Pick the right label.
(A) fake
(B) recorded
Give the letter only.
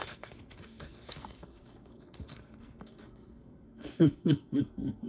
A